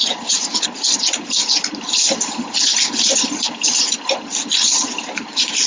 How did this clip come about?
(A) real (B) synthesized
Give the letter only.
A